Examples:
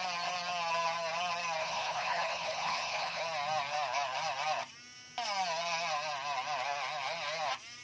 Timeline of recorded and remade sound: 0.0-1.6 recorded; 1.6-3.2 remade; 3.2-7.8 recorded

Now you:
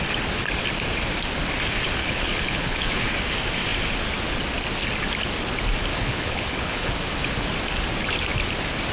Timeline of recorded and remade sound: 0.0-2.0 recorded; 2.0-3.1 remade; 3.1-5.9 recorded; 5.9-6.9 remade; 6.9-8.9 recorded